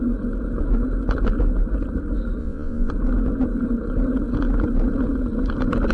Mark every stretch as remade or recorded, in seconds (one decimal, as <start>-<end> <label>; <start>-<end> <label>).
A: 0.0-2.4 recorded; 2.4-2.9 remade; 2.9-5.9 recorded